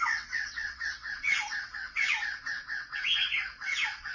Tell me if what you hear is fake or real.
fake